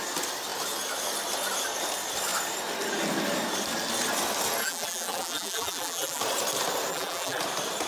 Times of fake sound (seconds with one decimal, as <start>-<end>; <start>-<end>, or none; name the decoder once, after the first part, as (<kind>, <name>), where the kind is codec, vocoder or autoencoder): 4.6-6.2 (vocoder, BigVGAN v2); 6.9-7.4